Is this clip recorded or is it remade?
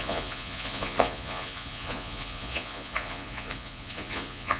remade